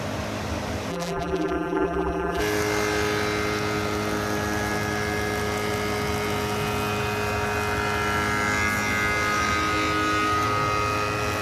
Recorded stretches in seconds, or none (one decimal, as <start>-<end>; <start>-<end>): 0.0-0.9; 2.4-11.4